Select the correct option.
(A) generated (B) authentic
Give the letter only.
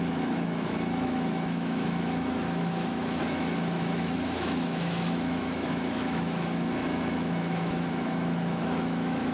A